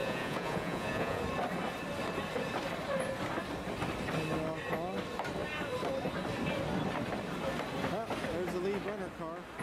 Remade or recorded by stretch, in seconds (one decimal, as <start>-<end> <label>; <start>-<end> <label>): 0.0-1.2 remade; 1.2-9.6 recorded